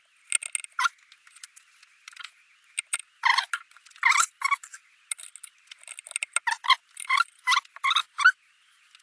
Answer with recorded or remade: recorded